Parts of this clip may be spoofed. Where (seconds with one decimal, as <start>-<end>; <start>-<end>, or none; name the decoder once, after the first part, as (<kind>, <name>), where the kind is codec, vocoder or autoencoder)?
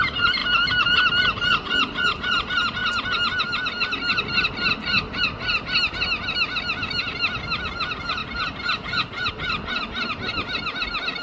0.4-1.1 (vocoder, BigVGAN v2); 8.2-9.3